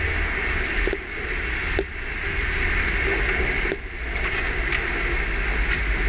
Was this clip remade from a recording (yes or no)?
no